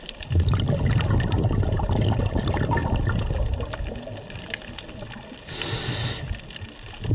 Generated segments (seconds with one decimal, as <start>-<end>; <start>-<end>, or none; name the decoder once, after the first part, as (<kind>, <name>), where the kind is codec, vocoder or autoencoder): none